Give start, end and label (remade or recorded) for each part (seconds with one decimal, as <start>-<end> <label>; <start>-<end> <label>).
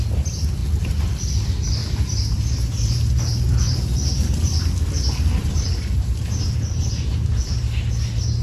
0.0-1.8 recorded; 1.8-4.7 remade; 4.7-5.4 recorded; 5.4-7.7 remade; 7.7-8.4 recorded